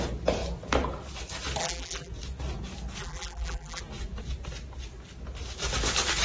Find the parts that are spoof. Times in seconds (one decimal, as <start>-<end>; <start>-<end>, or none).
1.6-2.1; 3.0-3.8